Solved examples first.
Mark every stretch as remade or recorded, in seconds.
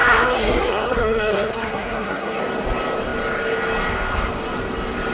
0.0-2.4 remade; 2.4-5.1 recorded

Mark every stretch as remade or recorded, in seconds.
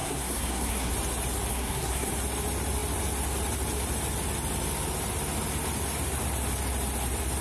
0.0-0.9 remade; 0.9-1.5 recorded; 1.5-2.1 remade; 2.1-7.4 recorded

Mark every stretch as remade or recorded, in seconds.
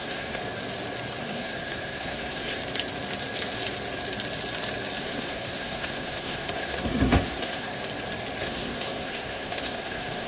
0.0-0.4 remade; 0.4-1.2 recorded; 1.2-2.6 remade; 2.6-5.0 recorded; 5.0-7.7 remade; 7.7-8.4 recorded; 8.4-10.3 remade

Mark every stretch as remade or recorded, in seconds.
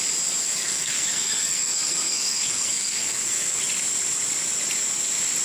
0.0-0.4 recorded; 0.4-3.6 remade; 3.6-5.4 recorded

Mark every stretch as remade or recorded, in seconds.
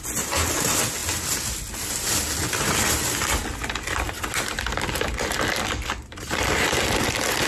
0.0-7.5 recorded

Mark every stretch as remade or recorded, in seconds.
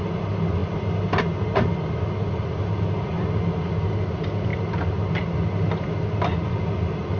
0.0-7.2 recorded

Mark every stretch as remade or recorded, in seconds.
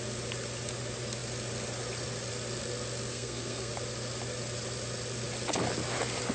0.0-3.1 recorded; 3.1-3.7 remade; 3.7-6.3 recorded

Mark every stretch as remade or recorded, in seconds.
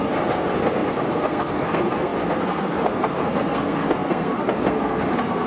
0.0-5.5 remade